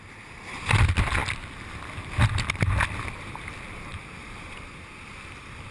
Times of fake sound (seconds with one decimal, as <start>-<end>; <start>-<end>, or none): 3.9-4.5